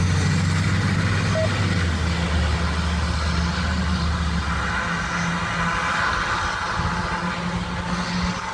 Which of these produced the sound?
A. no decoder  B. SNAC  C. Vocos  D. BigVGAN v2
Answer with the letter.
A